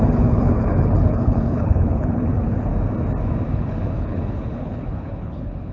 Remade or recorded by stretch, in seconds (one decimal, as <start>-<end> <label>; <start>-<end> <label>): 0.0-2.7 remade; 2.7-3.5 recorded; 3.5-5.7 remade